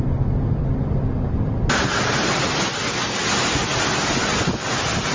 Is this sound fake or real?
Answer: real